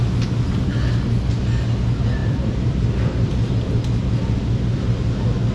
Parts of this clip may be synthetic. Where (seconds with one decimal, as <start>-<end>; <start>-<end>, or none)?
2.2-3.5